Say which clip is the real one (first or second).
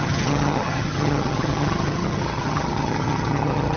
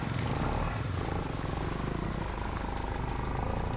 second